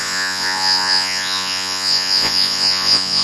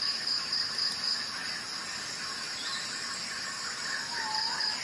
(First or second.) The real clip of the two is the second